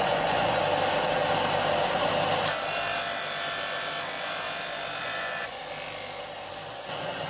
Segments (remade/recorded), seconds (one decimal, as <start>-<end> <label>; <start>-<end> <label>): 0.0-0.6 remade; 0.6-5.0 recorded; 5.0-5.6 remade; 5.6-6.7 recorded; 6.7-7.3 remade